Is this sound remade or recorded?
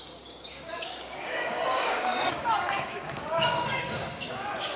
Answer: remade